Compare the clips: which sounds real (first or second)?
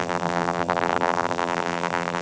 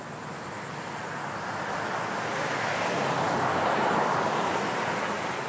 second